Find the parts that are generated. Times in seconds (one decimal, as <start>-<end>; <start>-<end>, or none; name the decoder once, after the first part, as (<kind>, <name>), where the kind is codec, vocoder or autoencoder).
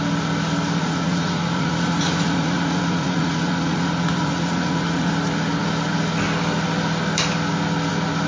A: 0.8-5.1 (vocoder, Vocos)